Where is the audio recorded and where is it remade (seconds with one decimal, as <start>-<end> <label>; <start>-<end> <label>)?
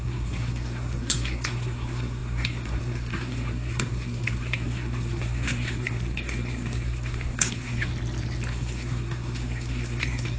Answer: 0.0-7.9 remade; 7.9-8.5 recorded; 8.5-10.4 remade